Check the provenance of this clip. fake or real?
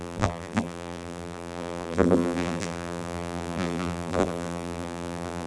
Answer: fake